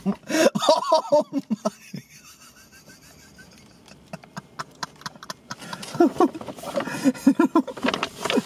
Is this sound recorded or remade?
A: recorded